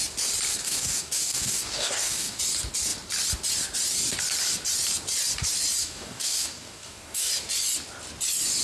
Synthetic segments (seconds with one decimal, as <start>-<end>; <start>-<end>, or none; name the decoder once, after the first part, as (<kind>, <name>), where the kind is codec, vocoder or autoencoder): 0.5-2.4 (codec, DAC); 5.8-7.3